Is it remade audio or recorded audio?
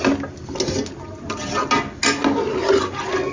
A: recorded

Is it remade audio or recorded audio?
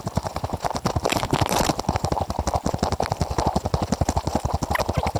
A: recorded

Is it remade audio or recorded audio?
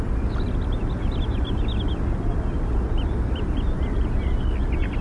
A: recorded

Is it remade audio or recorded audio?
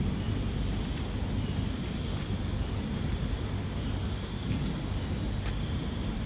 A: recorded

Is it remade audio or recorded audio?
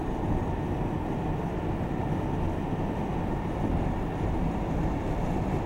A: recorded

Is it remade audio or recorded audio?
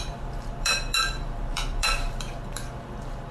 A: remade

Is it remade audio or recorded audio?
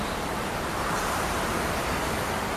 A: remade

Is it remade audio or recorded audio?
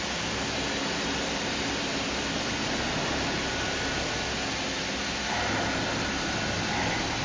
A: recorded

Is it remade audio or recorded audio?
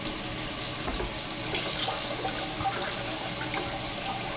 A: recorded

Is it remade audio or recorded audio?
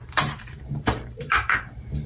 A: remade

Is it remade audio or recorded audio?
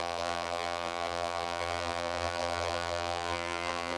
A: remade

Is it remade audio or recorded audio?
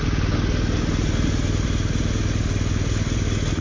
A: recorded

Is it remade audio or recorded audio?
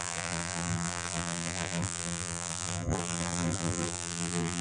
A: remade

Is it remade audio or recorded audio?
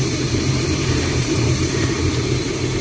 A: remade